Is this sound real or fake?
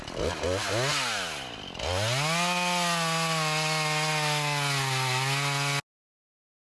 real